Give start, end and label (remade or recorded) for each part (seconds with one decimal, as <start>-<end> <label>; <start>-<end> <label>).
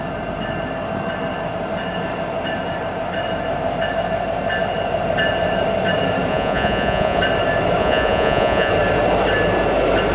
0.0-6.3 recorded; 6.3-7.2 remade; 7.2-7.8 recorded; 7.8-8.7 remade; 8.7-10.1 recorded